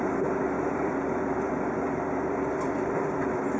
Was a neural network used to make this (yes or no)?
yes